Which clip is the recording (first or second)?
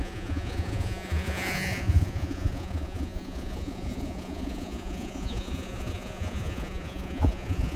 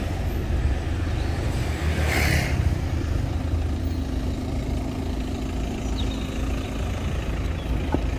second